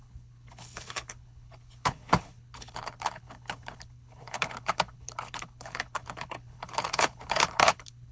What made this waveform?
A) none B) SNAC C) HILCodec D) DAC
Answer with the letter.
C